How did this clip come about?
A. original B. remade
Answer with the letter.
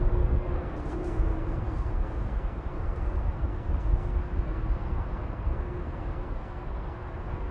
B